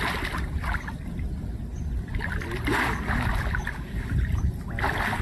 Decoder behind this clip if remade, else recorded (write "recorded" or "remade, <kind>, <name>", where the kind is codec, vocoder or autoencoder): recorded